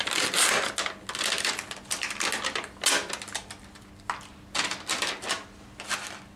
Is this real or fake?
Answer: real